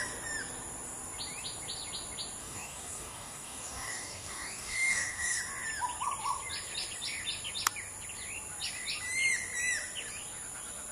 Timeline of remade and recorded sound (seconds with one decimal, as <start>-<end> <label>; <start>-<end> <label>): 0.0-2.4 recorded; 2.4-5.4 remade; 5.4-10.9 recorded